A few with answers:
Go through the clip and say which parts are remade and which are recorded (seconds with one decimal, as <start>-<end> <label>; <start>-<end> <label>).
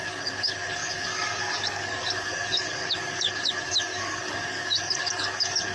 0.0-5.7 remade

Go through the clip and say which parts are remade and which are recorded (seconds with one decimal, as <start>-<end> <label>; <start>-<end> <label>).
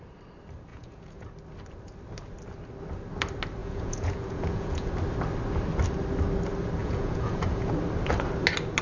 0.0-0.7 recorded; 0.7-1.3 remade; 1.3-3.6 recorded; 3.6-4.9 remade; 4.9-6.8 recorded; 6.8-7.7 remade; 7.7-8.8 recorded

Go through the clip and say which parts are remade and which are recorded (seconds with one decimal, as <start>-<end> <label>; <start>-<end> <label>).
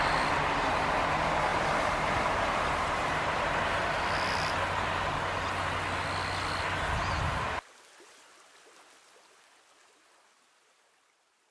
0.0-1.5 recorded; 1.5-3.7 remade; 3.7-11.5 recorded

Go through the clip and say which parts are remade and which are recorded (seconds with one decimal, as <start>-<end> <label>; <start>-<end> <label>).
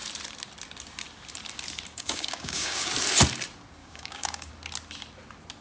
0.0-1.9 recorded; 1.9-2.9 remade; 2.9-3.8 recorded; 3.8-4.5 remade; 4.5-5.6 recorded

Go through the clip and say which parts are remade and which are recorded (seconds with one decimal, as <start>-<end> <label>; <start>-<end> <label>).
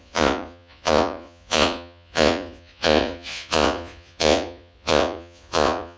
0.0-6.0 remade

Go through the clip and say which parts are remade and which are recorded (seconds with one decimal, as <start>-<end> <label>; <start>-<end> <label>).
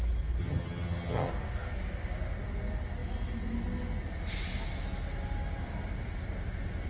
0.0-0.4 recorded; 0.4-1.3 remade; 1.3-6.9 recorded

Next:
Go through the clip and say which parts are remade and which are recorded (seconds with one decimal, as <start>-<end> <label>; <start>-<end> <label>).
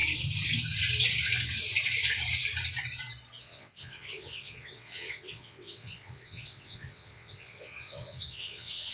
0.0-3.4 recorded; 3.4-8.9 remade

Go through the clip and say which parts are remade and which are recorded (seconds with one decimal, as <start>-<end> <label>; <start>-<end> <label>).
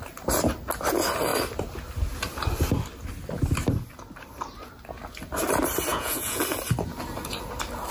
0.0-5.9 recorded; 5.9-6.4 remade; 6.4-7.9 recorded